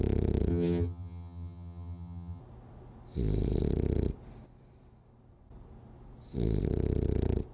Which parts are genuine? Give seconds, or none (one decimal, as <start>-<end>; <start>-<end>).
0.0-0.5; 2.4-7.5